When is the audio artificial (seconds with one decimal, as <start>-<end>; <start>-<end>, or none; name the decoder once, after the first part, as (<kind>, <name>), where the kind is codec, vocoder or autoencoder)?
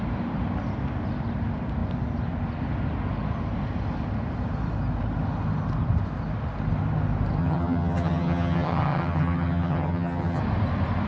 7.4-10.4 (vocoder, HiFi-GAN)